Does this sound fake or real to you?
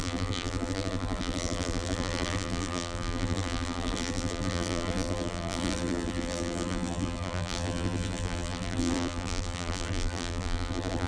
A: fake